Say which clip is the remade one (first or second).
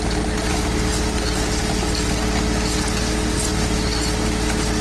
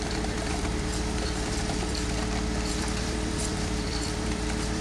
second